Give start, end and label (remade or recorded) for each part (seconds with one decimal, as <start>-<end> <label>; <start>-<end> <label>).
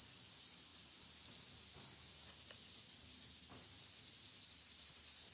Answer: 0.0-5.3 recorded